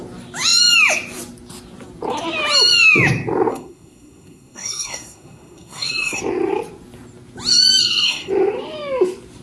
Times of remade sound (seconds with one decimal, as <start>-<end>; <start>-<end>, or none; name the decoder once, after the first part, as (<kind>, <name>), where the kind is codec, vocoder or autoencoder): 3.5-6.2 (codec, SNAC); 7.8-8.3